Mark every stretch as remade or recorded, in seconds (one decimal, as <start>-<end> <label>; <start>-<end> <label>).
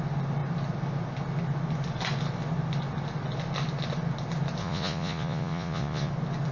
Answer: 0.0-4.6 recorded; 4.6-6.1 remade; 6.1-6.5 recorded